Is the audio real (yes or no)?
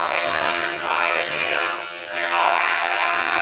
no